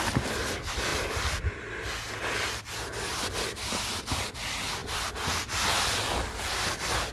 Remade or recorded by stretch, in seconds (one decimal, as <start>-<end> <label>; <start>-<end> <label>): 0.0-7.1 recorded